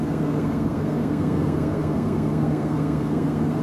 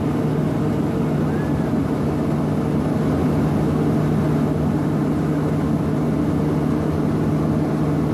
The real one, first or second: second